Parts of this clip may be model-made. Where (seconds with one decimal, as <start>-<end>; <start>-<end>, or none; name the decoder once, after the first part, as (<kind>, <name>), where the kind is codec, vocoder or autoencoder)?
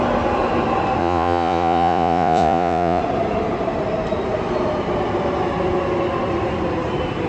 1.0-3.0 (vocoder, Vocos)